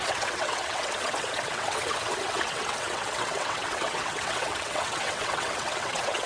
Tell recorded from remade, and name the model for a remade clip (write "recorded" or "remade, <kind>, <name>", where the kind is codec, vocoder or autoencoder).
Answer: remade, vocoder, WaveNeXt